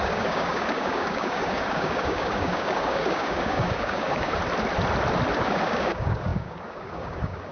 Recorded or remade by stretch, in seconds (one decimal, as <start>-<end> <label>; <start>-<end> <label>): 0.0-4.4 remade; 4.4-5.4 recorded; 5.4-7.5 remade

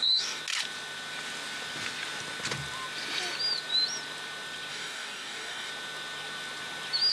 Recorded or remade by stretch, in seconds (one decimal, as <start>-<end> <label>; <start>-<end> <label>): 0.0-0.4 remade; 0.4-4.7 recorded; 4.7-5.7 remade; 5.7-7.1 recorded

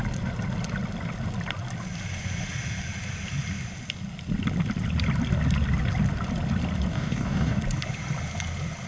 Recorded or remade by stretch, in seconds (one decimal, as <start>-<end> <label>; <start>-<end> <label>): 0.0-6.9 recorded; 6.9-7.6 remade; 7.6-8.9 recorded

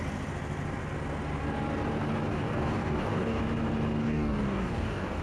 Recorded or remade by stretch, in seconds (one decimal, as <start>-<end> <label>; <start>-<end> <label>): 0.0-2.3 recorded; 2.3-3.4 remade; 3.4-4.0 recorded; 4.0-5.2 remade

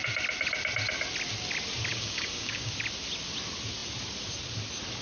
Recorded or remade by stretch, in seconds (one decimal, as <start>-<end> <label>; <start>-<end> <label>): 0.0-1.9 recorded; 1.9-2.7 remade; 2.7-5.0 recorded